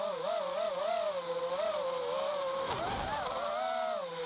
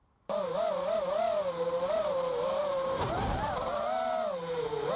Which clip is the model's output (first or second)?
second